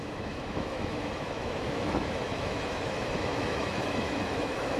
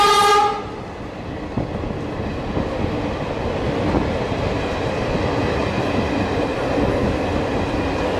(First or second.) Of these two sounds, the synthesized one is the first